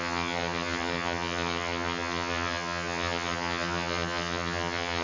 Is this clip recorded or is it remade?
remade